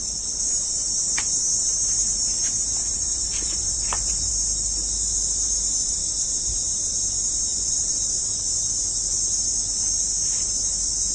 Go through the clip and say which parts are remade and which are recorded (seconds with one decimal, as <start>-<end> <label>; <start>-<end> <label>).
0.0-2.8 recorded; 2.8-4.3 remade; 4.3-7.5 recorded; 7.5-8.2 remade; 8.2-11.1 recorded